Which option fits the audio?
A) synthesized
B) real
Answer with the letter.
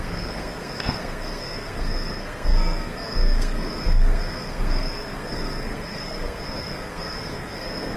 A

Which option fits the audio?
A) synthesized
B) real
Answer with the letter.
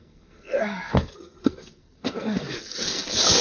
A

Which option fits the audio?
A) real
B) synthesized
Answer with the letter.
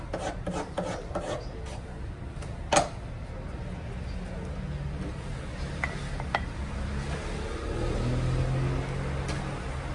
A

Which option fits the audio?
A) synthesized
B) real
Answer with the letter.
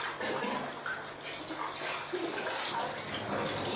B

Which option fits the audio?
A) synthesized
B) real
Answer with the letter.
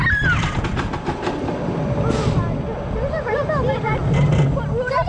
B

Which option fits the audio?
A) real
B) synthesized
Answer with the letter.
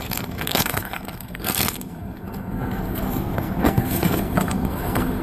B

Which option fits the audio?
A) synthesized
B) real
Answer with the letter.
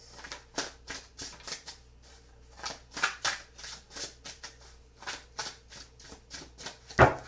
B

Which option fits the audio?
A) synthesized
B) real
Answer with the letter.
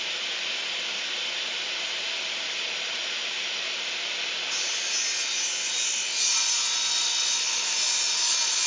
B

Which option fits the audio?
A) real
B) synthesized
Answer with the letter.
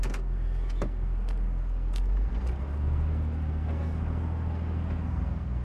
B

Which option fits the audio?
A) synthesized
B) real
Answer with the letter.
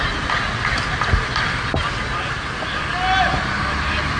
B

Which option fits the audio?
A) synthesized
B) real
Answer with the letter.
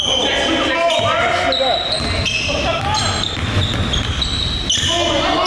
B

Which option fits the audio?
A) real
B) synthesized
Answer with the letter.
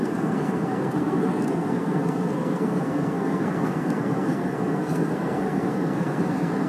B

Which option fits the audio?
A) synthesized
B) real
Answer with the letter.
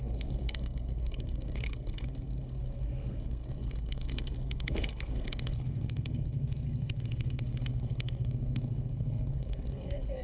A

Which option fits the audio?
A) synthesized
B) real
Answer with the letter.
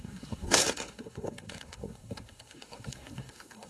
A